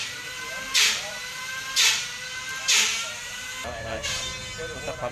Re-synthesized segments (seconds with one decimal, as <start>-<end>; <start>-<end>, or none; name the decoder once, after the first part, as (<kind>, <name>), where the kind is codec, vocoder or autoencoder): 0.0-4.3 (vocoder, BigVGAN v2)